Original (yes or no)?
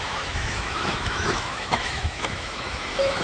no